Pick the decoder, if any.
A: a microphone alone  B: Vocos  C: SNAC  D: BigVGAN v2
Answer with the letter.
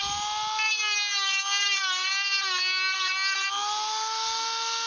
A